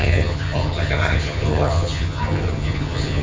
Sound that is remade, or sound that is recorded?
remade